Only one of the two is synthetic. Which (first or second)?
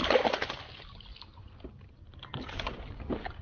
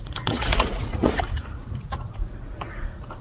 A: second